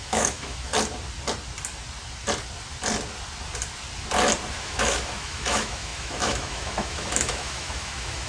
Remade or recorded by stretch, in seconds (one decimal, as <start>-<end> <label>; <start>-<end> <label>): 0.0-0.7 remade; 0.7-4.5 recorded; 4.5-8.3 remade